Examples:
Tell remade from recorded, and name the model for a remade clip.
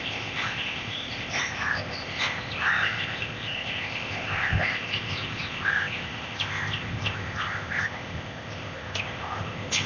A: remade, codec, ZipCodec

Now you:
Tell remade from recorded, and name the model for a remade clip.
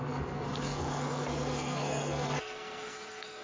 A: remade, codec, SNAC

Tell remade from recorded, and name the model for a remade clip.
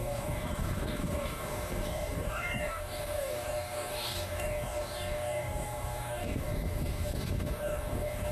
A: remade, codec, DAC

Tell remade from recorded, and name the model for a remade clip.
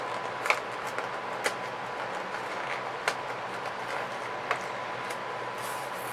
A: recorded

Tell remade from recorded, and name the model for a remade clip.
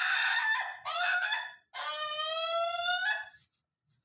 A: recorded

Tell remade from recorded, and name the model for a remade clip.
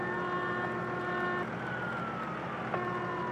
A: recorded